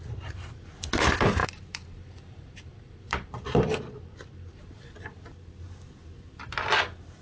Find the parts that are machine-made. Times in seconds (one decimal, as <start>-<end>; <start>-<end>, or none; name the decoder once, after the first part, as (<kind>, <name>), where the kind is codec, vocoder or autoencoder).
1.4-3.4 (vocoder, BigVGAN v2)